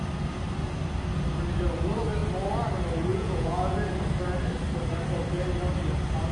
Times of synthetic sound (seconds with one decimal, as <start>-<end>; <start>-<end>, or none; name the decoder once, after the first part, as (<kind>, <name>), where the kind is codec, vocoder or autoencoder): 3.1-3.9 (vocoder, Vocos)